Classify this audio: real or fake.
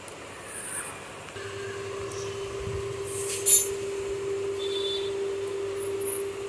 real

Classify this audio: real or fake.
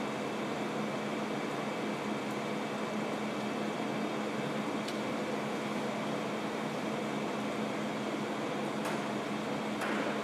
real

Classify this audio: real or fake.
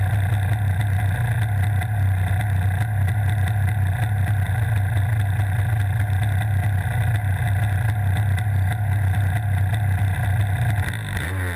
real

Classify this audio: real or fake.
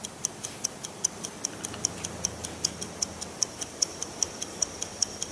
real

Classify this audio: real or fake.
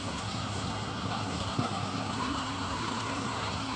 fake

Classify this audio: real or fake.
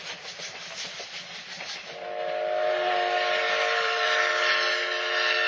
real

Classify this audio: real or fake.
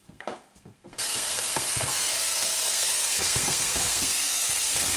fake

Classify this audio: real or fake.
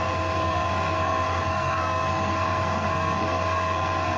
fake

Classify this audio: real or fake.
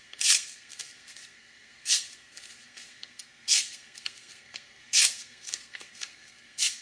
fake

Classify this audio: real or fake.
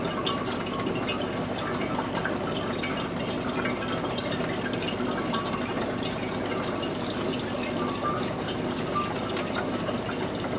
real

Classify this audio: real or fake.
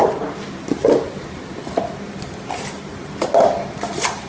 real